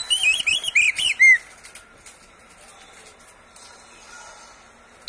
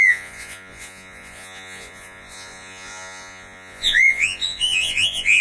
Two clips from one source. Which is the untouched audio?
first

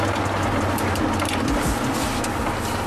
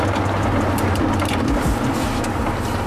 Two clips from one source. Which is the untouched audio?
first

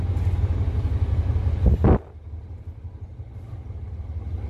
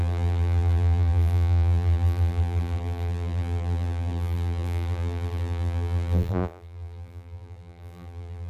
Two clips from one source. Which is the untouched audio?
first